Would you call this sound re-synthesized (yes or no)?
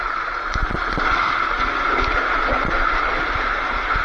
no